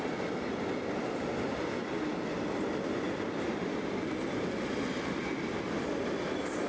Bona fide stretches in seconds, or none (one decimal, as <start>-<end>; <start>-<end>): 0.0-6.7